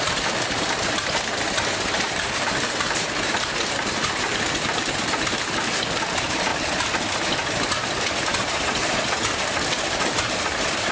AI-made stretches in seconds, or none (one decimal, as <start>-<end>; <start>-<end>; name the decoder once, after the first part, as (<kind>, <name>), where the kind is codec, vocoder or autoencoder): 0.0-6.5 (vocoder, BigVGAN v2); 8.5-10.9